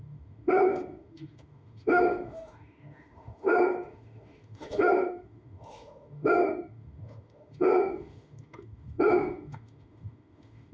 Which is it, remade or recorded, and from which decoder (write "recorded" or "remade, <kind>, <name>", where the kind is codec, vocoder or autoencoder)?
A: remade, autoencoder, DAC-VAE